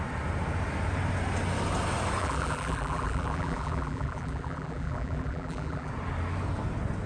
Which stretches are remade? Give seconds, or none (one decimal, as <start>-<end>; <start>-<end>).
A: 2.2-5.9